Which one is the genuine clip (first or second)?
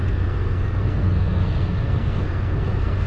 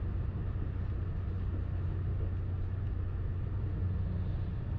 second